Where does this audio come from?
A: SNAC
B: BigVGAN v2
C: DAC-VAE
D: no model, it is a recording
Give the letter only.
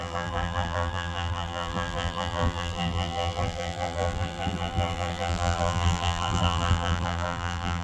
B